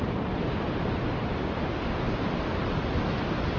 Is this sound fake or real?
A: real